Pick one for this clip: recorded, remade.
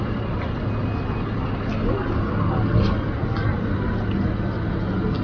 recorded